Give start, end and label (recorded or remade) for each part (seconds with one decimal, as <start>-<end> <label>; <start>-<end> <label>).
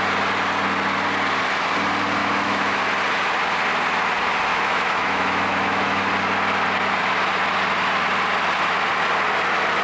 0.0-2.2 recorded; 2.2-2.8 remade; 2.8-4.5 recorded; 4.5-6.1 remade; 6.1-9.8 recorded